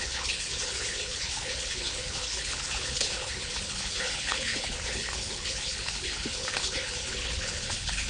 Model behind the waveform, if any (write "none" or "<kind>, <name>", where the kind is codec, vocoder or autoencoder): codec, HILCodec